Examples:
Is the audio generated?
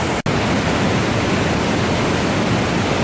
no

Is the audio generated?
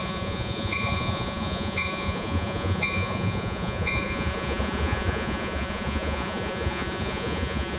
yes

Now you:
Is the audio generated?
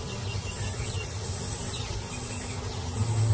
no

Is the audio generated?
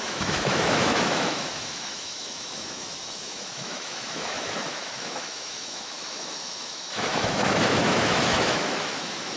yes